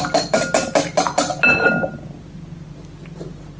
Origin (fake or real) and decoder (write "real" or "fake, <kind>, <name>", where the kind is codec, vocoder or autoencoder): real